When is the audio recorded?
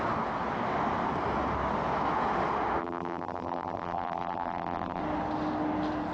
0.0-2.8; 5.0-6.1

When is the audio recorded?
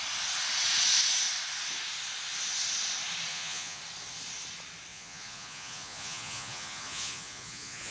0.0-3.3; 3.8-4.9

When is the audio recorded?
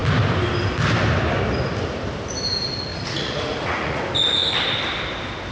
0.0-2.9; 4.0-5.5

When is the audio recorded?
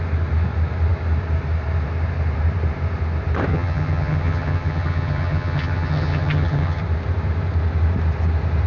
0.0-3.5; 6.8-8.7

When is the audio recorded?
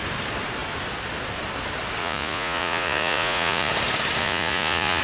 0.0-2.0; 3.7-4.2